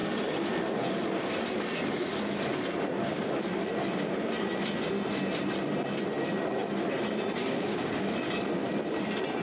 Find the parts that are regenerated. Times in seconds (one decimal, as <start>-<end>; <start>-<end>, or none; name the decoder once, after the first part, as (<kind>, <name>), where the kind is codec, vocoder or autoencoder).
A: 7.4-8.1 (codec, DAC)

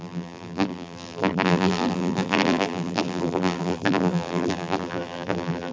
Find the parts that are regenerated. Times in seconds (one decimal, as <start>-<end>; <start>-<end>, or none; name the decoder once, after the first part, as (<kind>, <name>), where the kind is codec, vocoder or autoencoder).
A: 0.0-5.7 (vocoder, BigVGAN v2)

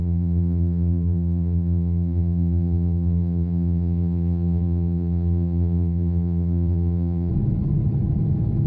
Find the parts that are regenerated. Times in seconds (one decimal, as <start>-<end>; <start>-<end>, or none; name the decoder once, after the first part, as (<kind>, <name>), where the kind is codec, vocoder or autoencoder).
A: 0.0-7.3 (vocoder, BigVGAN v2)

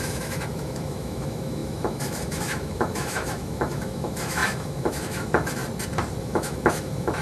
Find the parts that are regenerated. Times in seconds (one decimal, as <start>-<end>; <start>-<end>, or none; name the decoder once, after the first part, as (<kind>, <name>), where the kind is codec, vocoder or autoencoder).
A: 0.0-5.6 (autoencoder, DAC-VAE); 6.2-7.2